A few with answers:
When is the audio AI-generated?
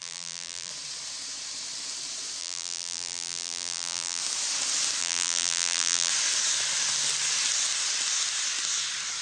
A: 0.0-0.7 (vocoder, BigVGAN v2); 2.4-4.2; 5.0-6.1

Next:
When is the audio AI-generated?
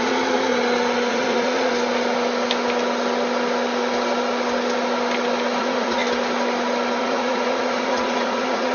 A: 0.0-0.5 (vocoder, Vocos); 1.1-1.7; 5.6-6.0; 7.0-8.7